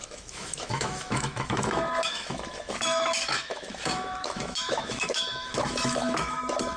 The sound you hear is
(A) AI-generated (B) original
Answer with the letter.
A